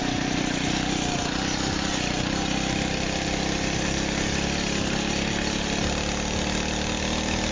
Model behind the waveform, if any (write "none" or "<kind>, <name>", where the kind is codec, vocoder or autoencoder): none